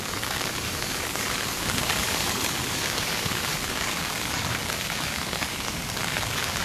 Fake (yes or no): yes